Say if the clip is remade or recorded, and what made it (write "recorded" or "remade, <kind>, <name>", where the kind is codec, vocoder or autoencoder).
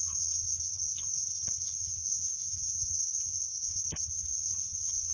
remade, codec, HILCodec